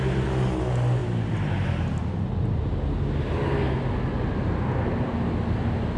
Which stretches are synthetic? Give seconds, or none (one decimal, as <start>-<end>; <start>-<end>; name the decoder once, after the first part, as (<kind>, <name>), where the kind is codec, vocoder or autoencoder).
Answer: none